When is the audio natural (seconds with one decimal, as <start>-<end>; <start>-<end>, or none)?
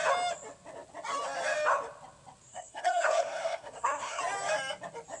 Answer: 0.0-2.5; 4.2-5.2